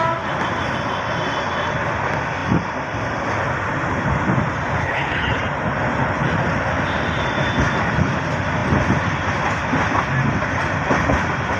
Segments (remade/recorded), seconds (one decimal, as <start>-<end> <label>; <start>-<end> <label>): 0.0-4.8 recorded; 4.8-5.4 remade; 5.4-11.6 recorded